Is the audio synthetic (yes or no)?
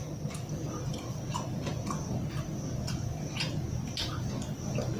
no